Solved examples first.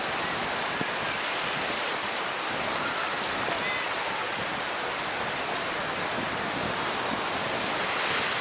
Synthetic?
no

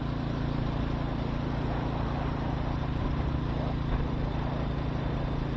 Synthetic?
no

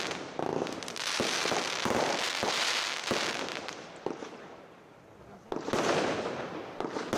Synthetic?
no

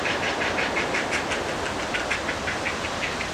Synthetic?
no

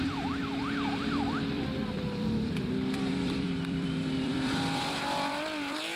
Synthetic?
yes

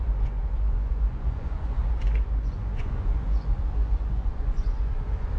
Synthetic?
yes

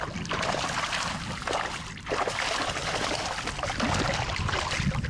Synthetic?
no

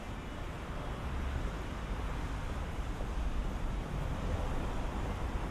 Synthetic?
no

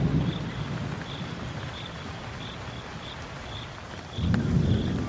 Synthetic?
no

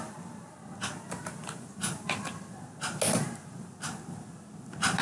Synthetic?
no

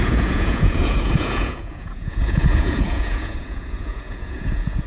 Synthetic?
yes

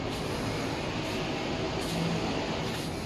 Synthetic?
no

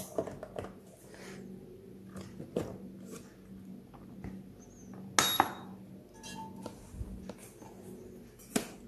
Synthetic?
no